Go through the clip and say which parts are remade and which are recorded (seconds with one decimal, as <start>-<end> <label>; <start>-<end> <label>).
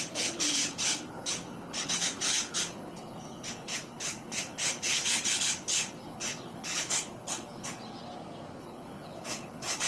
0.0-7.8 remade; 7.8-8.6 recorded; 8.6-9.9 remade